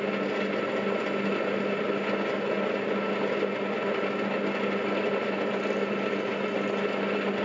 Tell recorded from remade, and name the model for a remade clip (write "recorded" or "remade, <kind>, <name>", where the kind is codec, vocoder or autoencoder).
recorded